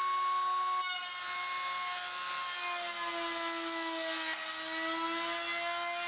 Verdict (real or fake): real